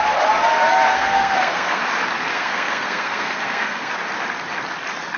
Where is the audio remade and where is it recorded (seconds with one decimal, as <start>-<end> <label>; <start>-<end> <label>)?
0.0-0.9 recorded; 0.9-1.8 remade; 1.8-2.3 recorded; 2.3-3.9 remade; 3.9-5.2 recorded